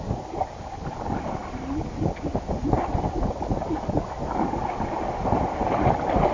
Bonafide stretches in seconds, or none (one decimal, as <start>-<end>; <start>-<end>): 0.0-6.3